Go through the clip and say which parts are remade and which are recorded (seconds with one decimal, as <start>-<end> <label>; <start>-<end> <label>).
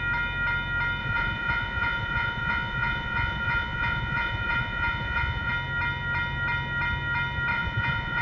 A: 0.0-1.0 recorded; 1.0-5.5 remade; 5.5-7.5 recorded; 7.5-8.2 remade